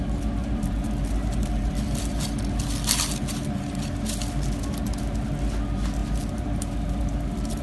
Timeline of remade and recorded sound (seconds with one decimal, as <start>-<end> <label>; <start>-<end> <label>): 0.0-0.4 recorded; 0.4-1.7 remade; 1.7-6.0 recorded; 6.0-7.6 remade